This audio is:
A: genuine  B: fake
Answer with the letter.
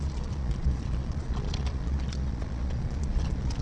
B